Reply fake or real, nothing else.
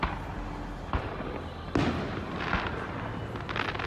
real